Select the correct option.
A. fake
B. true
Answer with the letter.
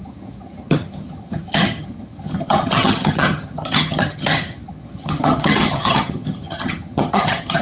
A